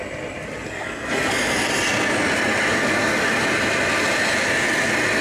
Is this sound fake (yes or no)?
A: no